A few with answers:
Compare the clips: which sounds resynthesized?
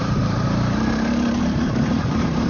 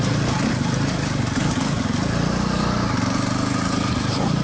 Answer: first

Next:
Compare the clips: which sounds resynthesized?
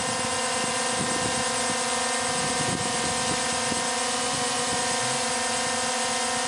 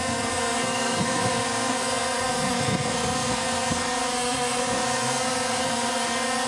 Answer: second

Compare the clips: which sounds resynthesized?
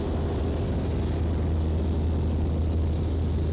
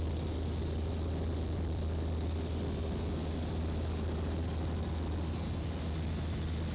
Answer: second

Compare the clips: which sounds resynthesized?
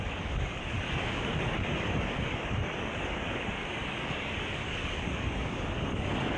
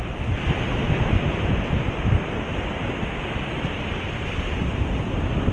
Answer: first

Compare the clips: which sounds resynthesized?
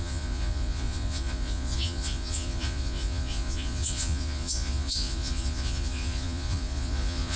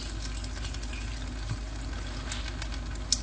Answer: first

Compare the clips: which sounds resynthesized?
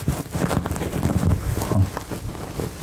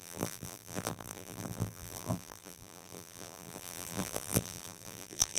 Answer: second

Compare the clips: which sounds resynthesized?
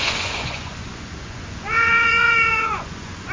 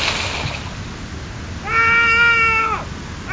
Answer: first